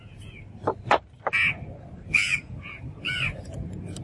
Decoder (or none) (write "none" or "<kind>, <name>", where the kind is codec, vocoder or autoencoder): none